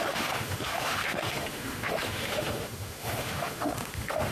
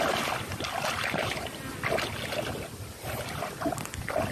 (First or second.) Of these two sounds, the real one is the second